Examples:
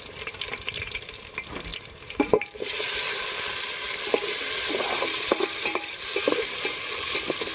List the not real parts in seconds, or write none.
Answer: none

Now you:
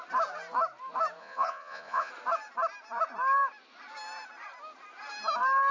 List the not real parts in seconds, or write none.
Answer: 1.2-2.1 (vocoder, Vocos)

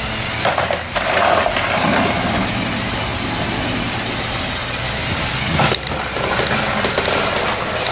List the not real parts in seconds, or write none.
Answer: none

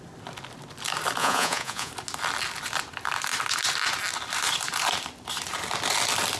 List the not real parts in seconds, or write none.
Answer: 1.2-1.9 (vocoder, Vocos)

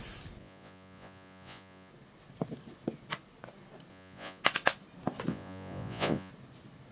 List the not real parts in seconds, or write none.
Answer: 0.4-1.9 (vocoder, Vocos); 3.9-4.4; 5.3-6.3

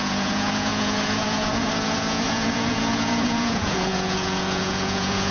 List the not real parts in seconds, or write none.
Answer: 0.0-5.3 (vocoder, Vocos)

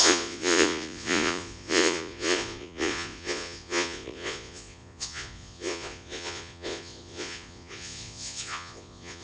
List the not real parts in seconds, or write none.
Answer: 0.0-9.2 (vocoder, Vocos)

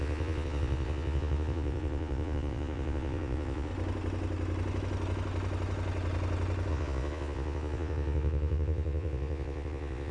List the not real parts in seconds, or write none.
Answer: 0.0-3.7 (vocoder, Vocos); 6.7-10.1